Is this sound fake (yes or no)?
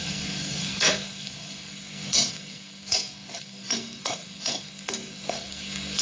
yes